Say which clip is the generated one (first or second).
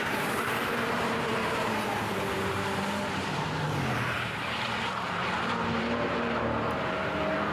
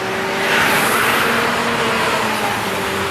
first